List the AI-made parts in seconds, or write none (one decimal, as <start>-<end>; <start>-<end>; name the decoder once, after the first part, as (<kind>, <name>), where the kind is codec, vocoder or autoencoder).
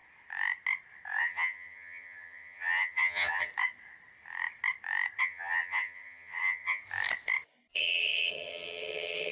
1.2-3.5 (vocoder, HiFi-GAN); 5.2-6.8; 7.7-9.3